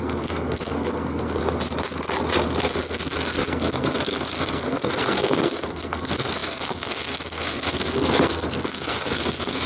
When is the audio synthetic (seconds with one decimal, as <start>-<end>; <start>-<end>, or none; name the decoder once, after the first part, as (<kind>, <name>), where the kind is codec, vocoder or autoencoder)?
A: 0.0-1.4 (codec, SNAC); 2.6-9.7